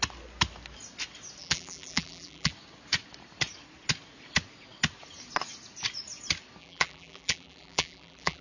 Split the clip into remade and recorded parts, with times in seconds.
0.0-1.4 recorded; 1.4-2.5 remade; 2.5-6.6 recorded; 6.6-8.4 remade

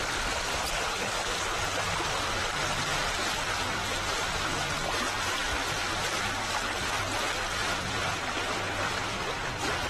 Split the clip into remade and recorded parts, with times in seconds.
0.0-7.6 recorded; 7.6-9.4 remade; 9.4-9.9 recorded

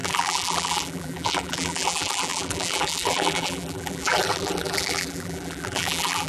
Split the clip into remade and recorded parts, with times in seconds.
0.0-6.3 remade

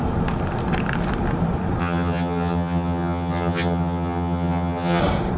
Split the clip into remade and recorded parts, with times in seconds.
0.0-1.8 recorded; 1.8-5.0 remade; 5.0-5.4 recorded

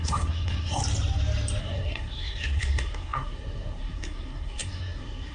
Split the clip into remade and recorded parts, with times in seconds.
0.0-0.8 remade; 0.8-1.6 recorded; 1.6-5.3 remade

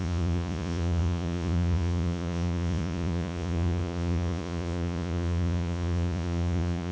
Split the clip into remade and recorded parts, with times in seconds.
0.0-6.9 remade

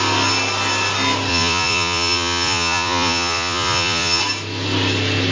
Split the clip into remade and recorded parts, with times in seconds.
0.0-1.3 recorded; 1.3-4.2 remade; 4.2-5.3 recorded